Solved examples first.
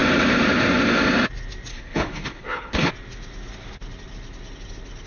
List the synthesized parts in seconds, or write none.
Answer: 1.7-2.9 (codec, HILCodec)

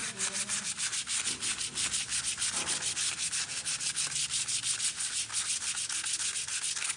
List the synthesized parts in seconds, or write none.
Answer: none

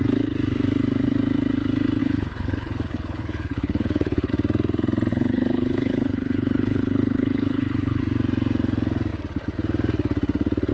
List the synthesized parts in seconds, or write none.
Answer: 2.0-4.3 (codec, HILCodec); 5.1-8.0

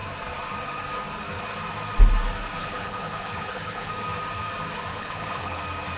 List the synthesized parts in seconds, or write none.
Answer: 2.6-3.9 (codec, HILCodec); 4.9-5.6

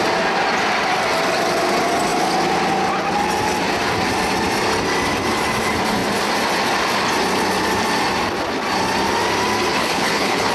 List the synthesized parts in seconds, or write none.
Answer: 9.7-10.5 (codec, HILCodec)

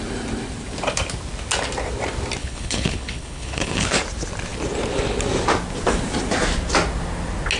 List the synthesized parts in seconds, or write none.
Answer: 2.4-4.0 (codec, HILCodec)

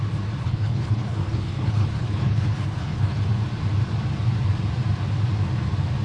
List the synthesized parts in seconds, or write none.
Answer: 0.4-3.2 (codec, HILCodec)

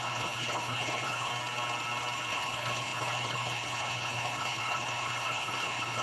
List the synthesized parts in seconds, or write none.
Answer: 0.0-1.3 (codec, HILCodec); 2.3-6.0